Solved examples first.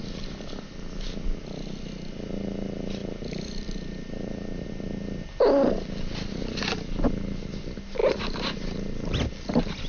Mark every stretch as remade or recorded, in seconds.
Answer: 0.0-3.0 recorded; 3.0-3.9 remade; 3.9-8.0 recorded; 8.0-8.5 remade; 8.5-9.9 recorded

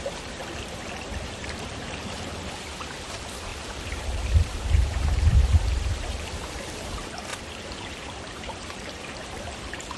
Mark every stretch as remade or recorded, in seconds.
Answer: 0.0-10.0 remade

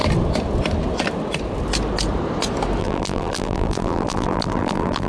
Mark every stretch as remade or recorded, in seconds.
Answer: 0.0-2.8 recorded; 2.8-5.1 remade